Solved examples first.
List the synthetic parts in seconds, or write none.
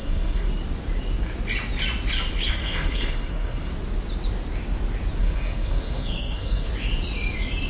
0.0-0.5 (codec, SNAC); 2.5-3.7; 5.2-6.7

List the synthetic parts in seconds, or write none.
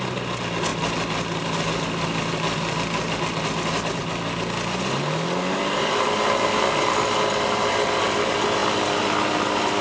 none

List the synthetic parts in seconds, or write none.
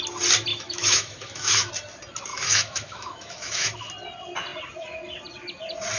0.5-1.7 (autoencoder, DAC-VAE); 2.3-3.9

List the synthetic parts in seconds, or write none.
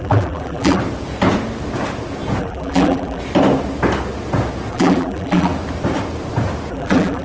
0.0-0.8 (vocoder, BigVGAN v2); 2.4-3.2; 4.7-5.5; 6.7-7.2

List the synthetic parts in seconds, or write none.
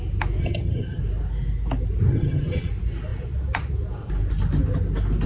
0.4-1.0 (vocoder, HiFi-GAN); 2.1-2.7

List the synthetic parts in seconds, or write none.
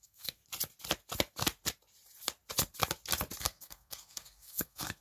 0.0-0.4 (codec, SNAC); 3.4-5.0